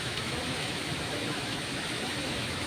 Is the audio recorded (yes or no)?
no